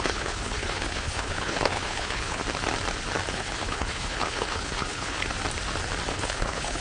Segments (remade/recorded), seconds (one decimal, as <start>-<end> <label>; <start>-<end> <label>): 0.0-2.4 remade; 2.4-3.3 recorded; 3.3-5.2 remade; 5.2-6.1 recorded; 6.1-6.8 remade